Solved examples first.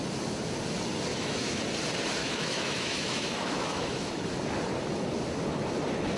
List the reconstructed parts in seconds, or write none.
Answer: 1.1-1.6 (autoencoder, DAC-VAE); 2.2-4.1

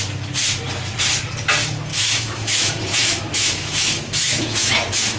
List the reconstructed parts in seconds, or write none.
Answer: 1.9-5.2 (autoencoder, DAC-VAE)

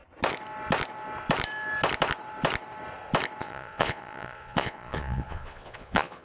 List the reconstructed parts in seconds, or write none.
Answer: 3.4-6.2 (vocoder, Vocos)